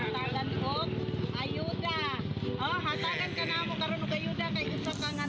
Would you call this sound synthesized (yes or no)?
no